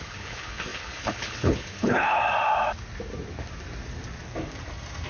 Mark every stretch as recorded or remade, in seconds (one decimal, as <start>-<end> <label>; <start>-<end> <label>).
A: 0.0-2.2 remade; 2.2-5.1 recorded